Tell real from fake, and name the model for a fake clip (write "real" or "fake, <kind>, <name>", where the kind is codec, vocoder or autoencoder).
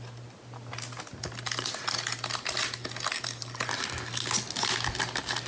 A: real